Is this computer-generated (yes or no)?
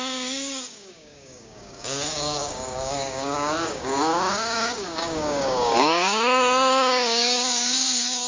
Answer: yes